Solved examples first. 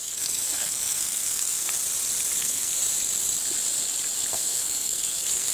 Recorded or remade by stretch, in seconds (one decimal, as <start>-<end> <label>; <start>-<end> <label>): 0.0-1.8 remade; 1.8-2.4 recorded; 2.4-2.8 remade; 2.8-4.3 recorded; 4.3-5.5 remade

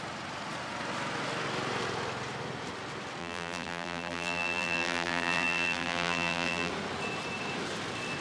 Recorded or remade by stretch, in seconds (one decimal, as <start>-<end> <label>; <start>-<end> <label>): 0.0-3.2 recorded; 3.2-6.7 remade; 6.7-8.2 recorded

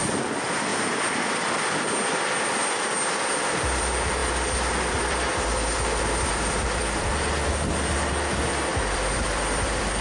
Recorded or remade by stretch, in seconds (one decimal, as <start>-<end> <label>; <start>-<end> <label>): 0.0-10.0 recorded